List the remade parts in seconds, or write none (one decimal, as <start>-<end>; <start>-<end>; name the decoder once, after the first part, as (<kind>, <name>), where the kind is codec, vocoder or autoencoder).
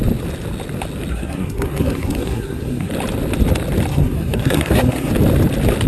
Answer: 1.1-2.9 (codec, SNAC); 3.9-5.1